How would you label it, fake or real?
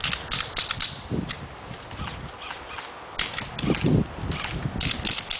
real